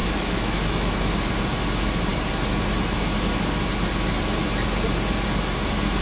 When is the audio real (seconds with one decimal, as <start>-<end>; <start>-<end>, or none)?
1.3-6.0

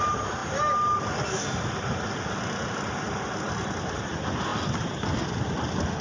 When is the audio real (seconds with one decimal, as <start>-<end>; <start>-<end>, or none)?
0.0-6.0

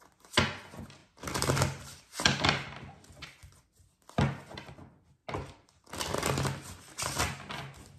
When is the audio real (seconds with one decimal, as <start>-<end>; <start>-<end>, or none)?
0.0-8.0

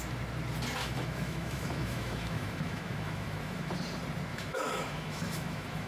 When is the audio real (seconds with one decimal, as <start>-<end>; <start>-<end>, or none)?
0.0-0.8; 3.7-4.3

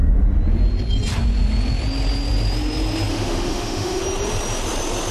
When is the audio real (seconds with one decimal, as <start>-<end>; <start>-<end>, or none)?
0.0-3.1; 4.0-5.1

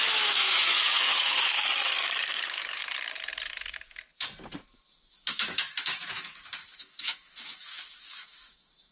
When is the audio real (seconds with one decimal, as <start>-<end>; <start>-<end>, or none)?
2.8-5.0

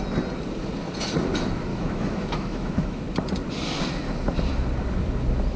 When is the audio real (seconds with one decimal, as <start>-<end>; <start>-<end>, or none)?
0.0-1.7; 3.0-5.6

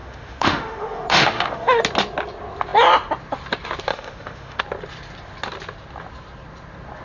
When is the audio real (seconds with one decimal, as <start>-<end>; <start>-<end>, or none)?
1.8-3.9; 4.6-7.0